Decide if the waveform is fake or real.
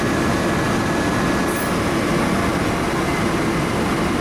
real